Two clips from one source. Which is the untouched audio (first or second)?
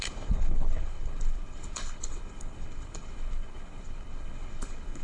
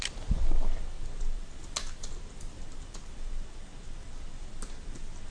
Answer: second